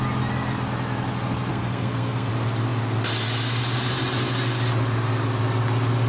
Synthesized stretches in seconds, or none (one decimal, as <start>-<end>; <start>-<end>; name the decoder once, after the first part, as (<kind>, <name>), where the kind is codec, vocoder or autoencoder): 1.5-2.3 (codec, SNAC)